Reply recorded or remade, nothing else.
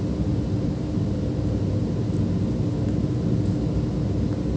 recorded